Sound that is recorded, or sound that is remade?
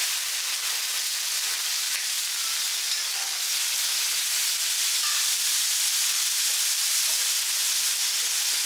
recorded